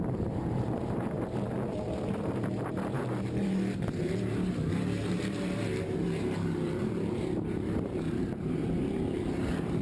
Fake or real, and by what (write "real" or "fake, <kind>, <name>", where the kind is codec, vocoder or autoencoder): fake, vocoder, BigVGAN v2